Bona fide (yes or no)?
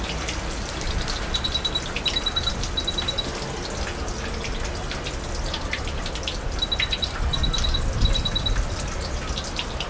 yes